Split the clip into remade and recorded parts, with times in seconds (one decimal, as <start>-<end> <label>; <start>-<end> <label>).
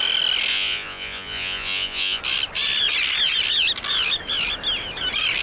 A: 0.0-0.5 recorded; 0.5-2.2 remade; 2.2-5.4 recorded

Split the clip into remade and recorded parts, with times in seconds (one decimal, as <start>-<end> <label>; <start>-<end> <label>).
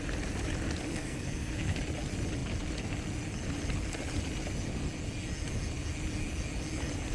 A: 0.0-0.9 recorded; 0.9-1.8 remade; 1.8-7.1 recorded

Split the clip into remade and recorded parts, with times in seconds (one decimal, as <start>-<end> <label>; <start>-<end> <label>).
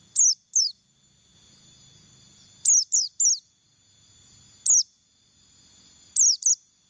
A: 0.0-6.9 recorded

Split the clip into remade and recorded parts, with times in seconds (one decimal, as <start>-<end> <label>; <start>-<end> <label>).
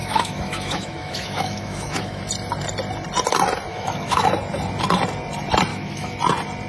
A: 0.0-2.2 remade; 2.2-3.7 recorded; 3.7-4.3 remade; 4.3-5.7 recorded; 5.7-6.2 remade; 6.2-6.7 recorded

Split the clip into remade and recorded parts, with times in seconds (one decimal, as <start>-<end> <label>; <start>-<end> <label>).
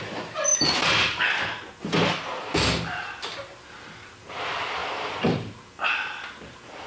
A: 0.0-4.8 recorded; 4.8-5.7 remade; 5.7-6.9 recorded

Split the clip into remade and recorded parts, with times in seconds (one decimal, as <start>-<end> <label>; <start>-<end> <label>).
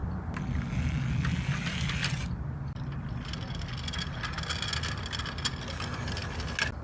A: 0.0-6.8 recorded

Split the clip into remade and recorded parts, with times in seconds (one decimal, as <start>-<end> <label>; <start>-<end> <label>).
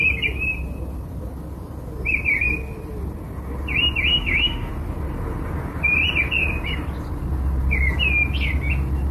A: 0.0-4.1 recorded; 4.1-4.7 remade; 4.7-9.1 recorded